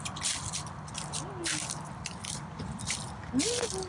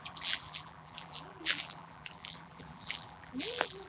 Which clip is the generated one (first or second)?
second